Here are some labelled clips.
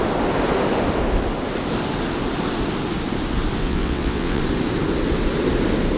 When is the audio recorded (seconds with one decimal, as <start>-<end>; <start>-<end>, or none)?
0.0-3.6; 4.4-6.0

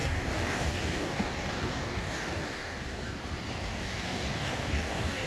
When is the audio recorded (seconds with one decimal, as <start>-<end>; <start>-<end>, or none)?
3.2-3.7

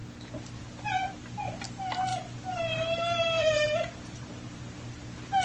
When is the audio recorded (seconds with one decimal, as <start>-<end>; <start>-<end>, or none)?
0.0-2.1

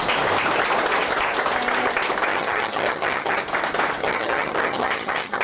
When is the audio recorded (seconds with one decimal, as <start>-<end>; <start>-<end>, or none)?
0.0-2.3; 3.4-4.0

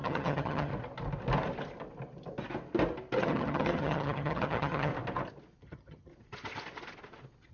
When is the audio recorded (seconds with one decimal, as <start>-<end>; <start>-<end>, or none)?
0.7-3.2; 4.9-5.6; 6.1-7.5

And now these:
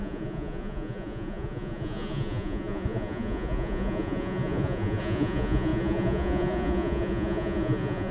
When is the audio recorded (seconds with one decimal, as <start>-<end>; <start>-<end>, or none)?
none